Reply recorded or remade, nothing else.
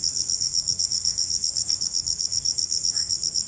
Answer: remade